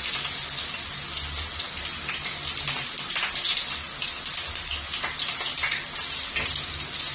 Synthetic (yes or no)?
no